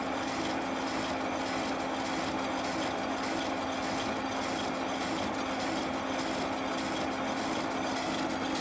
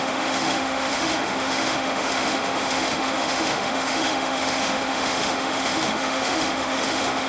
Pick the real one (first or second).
first